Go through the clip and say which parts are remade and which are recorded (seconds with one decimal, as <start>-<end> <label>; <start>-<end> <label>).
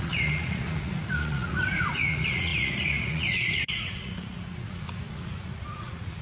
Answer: 0.0-6.2 remade